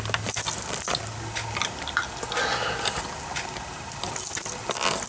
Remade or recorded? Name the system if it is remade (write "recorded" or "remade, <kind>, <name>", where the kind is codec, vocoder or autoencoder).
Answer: recorded